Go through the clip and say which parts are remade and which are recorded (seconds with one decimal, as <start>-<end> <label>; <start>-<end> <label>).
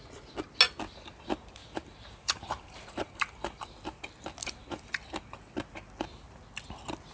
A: 0.0-1.6 recorded; 1.6-3.6 remade; 3.6-4.4 recorded; 4.4-4.9 remade; 4.9-7.1 recorded